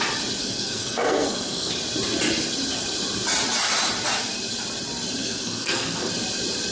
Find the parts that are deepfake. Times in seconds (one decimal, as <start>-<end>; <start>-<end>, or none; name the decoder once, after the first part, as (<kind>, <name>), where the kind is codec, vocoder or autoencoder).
0.4-1.7 (codec, SNAC); 5.2-6.1